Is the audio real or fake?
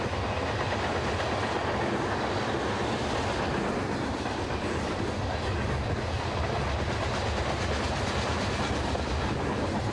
real